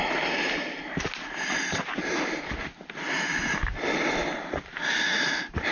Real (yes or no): yes